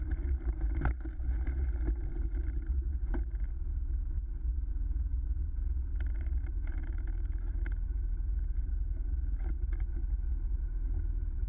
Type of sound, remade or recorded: remade